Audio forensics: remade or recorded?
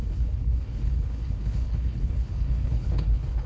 remade